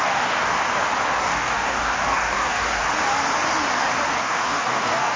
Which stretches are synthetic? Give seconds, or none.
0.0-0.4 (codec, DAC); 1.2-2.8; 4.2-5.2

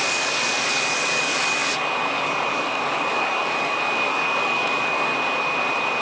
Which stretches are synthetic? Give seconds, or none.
0.0-5.1 (codec, DAC)

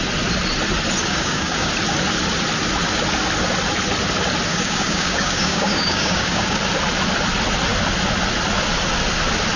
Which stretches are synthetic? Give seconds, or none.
1.0-1.7 (codec, DAC); 4.5-6.6

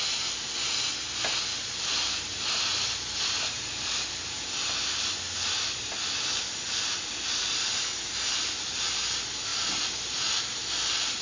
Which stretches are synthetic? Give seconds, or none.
none

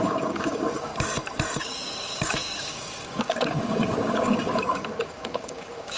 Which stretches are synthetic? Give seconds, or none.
0.0-0.9 (codec, DAC); 1.6-6.0

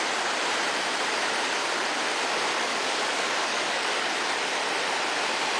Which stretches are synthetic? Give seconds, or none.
2.7-4.1 (codec, DAC)

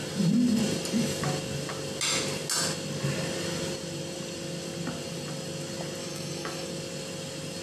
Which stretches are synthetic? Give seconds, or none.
6.0-6.7 (codec, DAC)

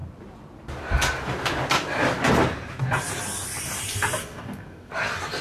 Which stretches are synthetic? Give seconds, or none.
4.2-4.9 (codec, DAC)